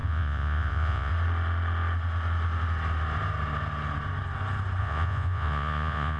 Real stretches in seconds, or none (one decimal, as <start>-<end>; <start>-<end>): 1.1-4.8